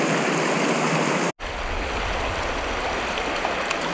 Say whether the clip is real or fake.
real